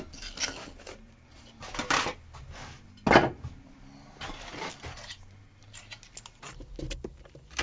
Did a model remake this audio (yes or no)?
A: no